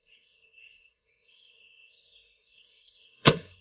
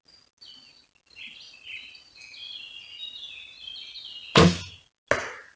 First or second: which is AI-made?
first